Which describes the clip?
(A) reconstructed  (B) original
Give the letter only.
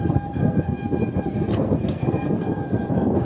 A